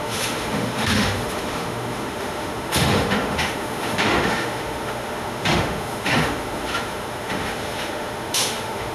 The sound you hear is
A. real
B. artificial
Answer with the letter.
B